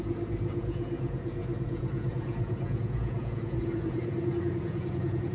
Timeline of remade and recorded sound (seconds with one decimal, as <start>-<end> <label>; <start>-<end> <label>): 0.0-5.3 remade